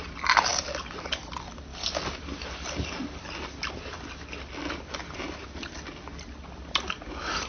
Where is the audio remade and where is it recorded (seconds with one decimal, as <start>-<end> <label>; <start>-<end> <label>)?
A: 0.0-7.5 recorded

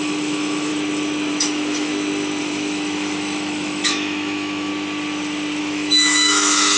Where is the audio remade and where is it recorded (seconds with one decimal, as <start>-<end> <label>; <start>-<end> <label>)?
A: 0.0-0.7 remade; 0.7-1.3 recorded; 1.3-1.9 remade; 1.9-2.4 recorded; 2.4-4.7 remade; 4.7-5.6 recorded; 5.6-6.8 remade

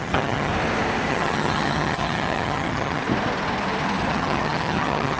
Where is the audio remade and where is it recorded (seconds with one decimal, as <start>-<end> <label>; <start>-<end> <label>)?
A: 0.0-0.5 remade; 0.5-1.1 recorded; 1.1-3.0 remade; 3.0-4.1 recorded; 4.1-5.2 remade

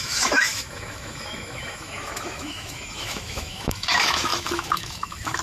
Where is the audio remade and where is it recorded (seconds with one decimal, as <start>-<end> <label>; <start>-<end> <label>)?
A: 0.0-5.4 remade

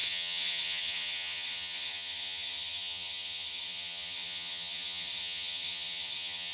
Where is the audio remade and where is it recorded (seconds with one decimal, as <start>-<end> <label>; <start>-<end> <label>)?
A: 0.0-6.5 remade

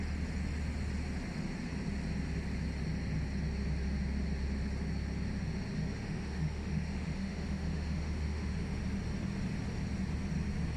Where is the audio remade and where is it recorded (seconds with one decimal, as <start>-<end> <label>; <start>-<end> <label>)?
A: 0.0-5.7 recorded; 5.7-8.8 remade; 8.8-10.8 recorded